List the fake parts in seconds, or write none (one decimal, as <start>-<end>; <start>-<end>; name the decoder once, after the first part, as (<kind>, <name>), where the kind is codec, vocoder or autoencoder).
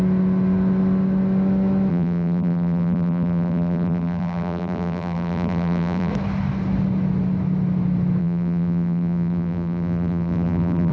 1.9-6.1 (vocoder, BigVGAN v2); 8.2-10.9